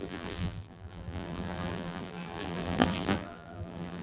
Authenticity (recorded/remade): remade